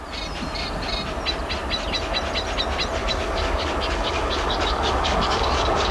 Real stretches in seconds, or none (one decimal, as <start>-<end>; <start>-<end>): 0.0-3.0